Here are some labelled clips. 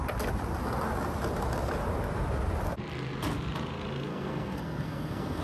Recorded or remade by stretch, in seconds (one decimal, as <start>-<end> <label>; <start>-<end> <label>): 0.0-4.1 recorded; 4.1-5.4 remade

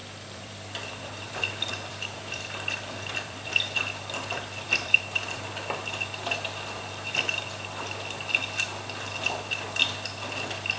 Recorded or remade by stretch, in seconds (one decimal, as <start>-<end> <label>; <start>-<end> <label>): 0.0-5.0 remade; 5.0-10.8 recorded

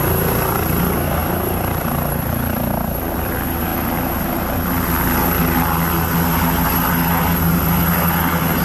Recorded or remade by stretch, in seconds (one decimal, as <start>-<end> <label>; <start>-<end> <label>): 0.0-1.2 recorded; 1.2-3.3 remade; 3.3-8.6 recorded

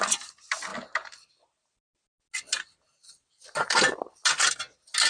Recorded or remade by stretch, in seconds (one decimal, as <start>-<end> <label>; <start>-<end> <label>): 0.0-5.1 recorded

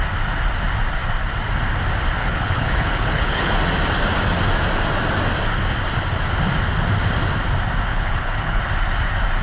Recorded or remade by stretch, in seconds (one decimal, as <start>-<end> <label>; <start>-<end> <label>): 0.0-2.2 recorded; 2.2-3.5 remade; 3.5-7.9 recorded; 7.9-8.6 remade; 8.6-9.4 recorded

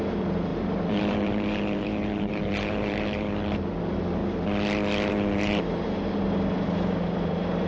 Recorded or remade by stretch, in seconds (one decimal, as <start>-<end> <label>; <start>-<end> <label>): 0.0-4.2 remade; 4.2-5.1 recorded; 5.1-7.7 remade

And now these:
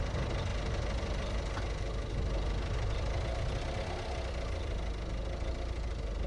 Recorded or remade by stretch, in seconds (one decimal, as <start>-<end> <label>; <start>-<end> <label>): 0.0-6.3 recorded